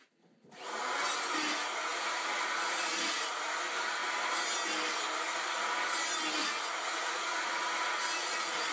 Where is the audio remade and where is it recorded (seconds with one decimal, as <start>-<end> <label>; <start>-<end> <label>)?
0.0-1.9 recorded; 1.9-3.4 remade; 3.4-6.4 recorded; 6.4-8.7 remade